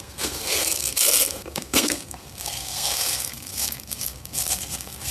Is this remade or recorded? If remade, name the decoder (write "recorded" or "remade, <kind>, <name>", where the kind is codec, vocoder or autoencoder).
remade, codec, SNAC